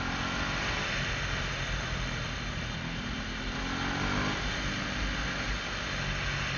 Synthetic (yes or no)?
no